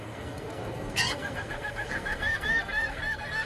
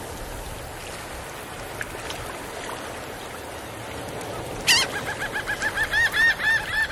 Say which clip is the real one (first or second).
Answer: second